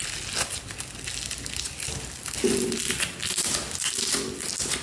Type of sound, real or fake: real